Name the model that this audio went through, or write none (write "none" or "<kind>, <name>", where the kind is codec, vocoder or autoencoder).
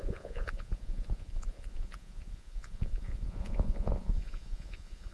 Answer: vocoder, Vocos